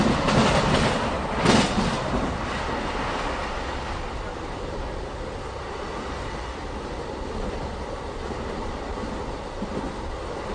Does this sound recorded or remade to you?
recorded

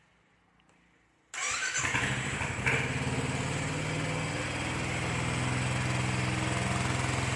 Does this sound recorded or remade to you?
recorded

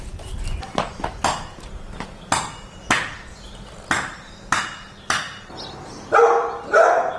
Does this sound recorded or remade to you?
recorded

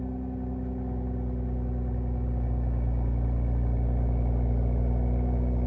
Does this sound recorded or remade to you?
recorded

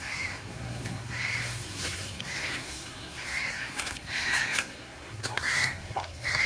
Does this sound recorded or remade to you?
remade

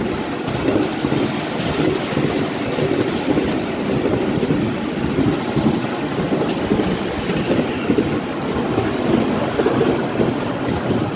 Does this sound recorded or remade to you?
recorded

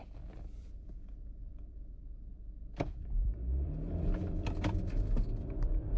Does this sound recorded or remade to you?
remade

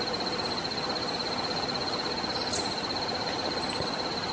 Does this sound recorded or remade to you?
recorded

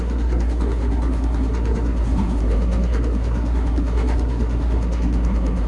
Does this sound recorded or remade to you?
remade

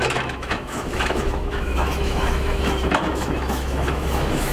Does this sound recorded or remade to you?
remade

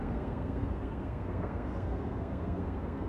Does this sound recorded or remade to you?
remade